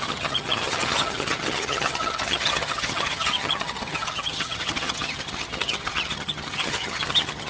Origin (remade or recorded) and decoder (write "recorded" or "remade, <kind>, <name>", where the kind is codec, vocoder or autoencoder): remade, vocoder, HiFi-GAN